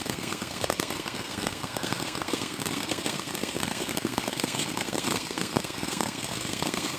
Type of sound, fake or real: fake